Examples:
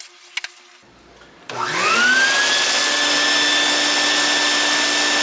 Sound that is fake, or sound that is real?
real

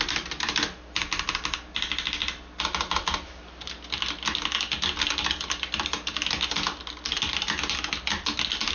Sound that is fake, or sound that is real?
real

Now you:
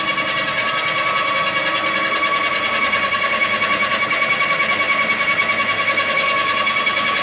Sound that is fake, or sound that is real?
real